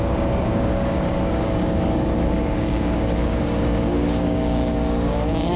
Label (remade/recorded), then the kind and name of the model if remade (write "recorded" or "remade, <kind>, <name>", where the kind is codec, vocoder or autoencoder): remade, codec, DAC